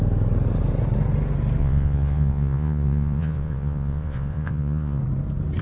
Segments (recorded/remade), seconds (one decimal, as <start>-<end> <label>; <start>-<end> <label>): 0.0-1.6 recorded; 1.6-5.0 remade; 5.0-5.6 recorded